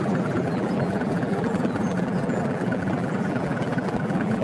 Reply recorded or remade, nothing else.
remade